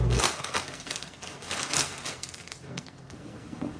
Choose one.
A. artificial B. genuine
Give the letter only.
A